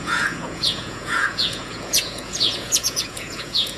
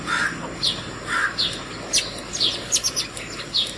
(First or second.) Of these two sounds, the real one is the second